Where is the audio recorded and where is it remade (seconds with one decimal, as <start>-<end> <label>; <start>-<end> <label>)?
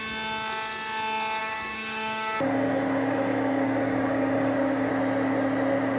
0.0-1.4 recorded; 1.4-4.9 remade; 4.9-6.0 recorded